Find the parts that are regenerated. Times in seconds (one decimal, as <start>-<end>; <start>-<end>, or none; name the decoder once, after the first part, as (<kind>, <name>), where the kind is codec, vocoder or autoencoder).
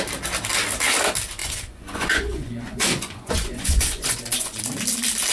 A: 1.4-4.6 (vocoder, Vocos)